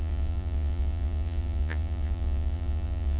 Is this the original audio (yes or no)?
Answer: no